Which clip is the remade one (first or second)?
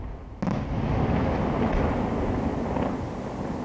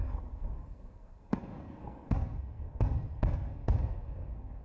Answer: second